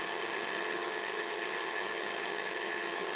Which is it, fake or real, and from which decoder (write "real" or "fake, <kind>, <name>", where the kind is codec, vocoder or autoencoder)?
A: fake, vocoder, HiFi-GAN